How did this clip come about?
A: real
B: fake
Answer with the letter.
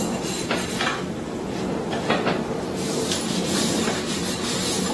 B